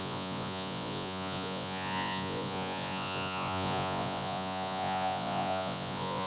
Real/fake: fake